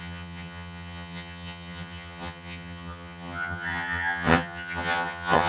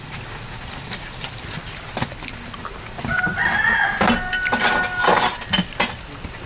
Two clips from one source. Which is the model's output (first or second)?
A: first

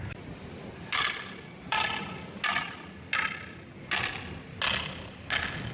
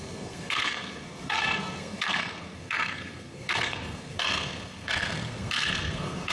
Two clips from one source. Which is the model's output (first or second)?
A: second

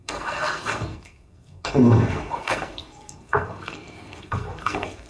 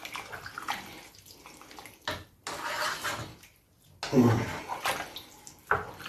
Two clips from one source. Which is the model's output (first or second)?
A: first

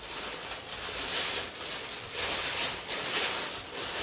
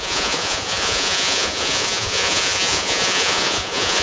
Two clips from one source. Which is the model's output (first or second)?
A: second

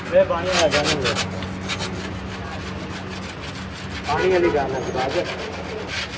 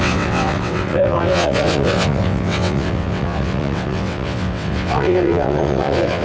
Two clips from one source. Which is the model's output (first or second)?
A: second